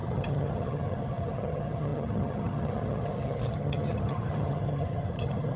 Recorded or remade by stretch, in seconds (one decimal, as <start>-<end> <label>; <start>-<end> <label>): 0.0-5.6 remade